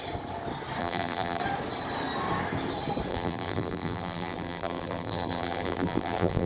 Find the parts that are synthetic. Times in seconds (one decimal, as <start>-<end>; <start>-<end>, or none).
0.8-1.4; 3.1-6.5